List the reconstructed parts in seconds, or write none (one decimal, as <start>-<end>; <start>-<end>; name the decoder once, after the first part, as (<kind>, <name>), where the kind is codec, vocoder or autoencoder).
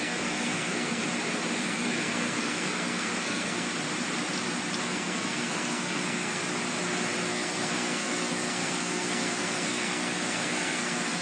0.0-1.0 (codec, SNAC); 1.6-3.7; 4.8-6.4; 7.3-11.2